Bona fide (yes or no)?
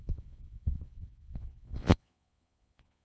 no